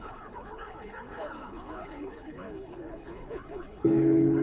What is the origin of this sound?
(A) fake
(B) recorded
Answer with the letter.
A